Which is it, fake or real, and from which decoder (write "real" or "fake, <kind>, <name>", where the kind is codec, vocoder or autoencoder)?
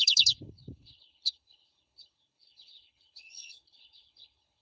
fake, codec, HILCodec